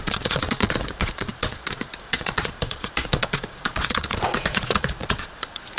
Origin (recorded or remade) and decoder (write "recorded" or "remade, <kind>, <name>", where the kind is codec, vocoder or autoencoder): remade, vocoder, Vocos